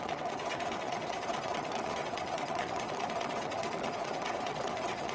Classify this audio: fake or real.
fake